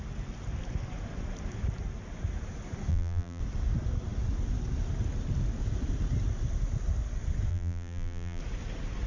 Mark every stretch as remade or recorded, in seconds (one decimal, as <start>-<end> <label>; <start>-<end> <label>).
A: 0.0-2.9 recorded; 2.9-3.4 remade; 3.4-7.5 recorded; 7.5-8.4 remade; 8.4-9.1 recorded

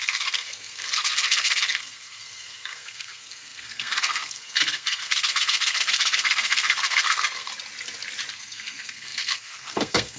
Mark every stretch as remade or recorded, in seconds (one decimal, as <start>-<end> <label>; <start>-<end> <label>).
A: 0.0-7.5 remade; 7.5-8.3 recorded; 8.3-10.2 remade

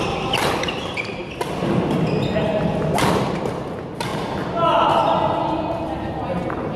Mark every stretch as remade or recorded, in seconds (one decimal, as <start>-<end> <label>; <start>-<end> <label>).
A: 0.0-6.8 recorded

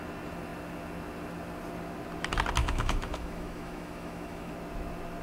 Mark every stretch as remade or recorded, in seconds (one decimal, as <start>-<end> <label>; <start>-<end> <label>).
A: 0.0-2.6 recorded; 2.6-4.5 remade; 4.5-5.2 recorded